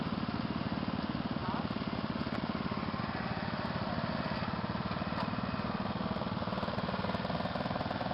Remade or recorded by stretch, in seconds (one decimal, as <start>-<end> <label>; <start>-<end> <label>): 0.0-8.1 recorded